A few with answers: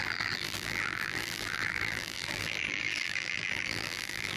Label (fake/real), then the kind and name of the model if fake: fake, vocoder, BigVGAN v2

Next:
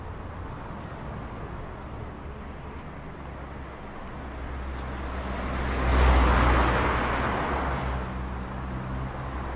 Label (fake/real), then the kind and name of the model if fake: real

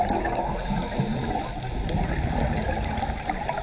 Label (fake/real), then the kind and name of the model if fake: real